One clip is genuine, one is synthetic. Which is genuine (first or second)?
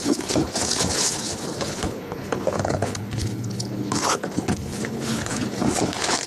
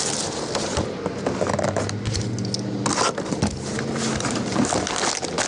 second